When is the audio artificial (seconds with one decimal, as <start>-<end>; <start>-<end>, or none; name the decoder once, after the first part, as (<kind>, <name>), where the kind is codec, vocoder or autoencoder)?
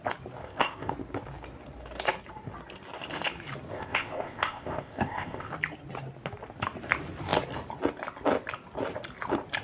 0.4-0.9 (codec, ZipCodec); 3.7-5.5